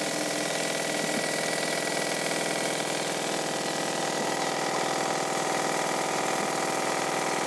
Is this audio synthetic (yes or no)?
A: no